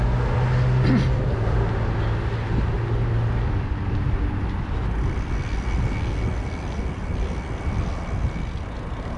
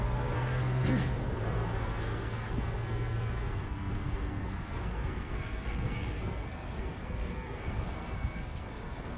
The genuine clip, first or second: first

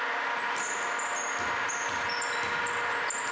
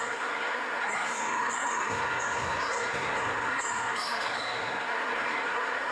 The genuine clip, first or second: first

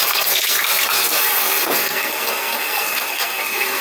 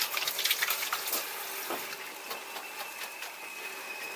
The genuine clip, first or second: second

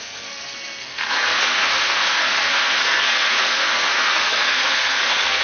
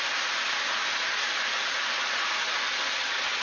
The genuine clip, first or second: second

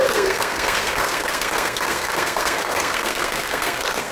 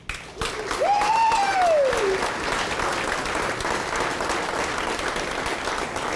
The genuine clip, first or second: second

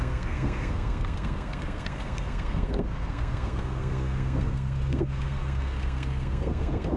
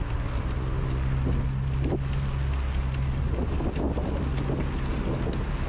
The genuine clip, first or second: second